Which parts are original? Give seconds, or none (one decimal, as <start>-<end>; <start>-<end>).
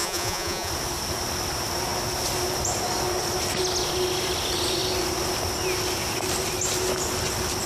0.7-7.7